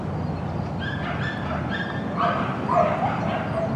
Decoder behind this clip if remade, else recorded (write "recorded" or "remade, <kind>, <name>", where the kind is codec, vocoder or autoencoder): recorded